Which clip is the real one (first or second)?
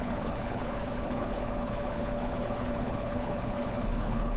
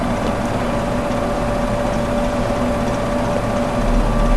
second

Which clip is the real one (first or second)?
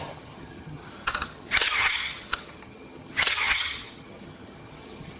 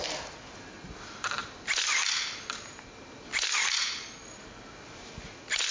second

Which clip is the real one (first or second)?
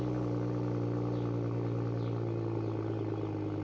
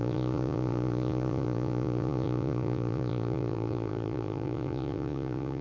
first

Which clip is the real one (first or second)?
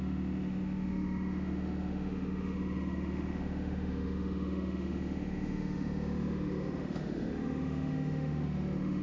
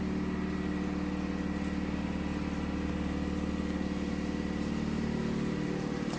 second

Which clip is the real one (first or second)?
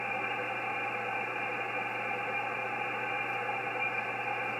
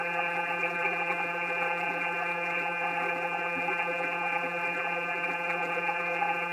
first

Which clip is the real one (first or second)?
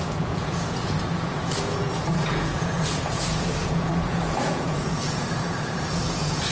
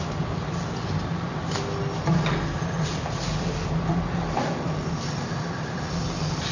second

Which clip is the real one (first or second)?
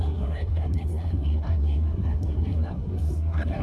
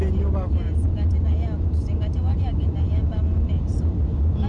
second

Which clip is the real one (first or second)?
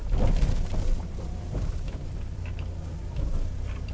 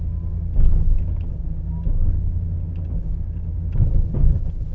second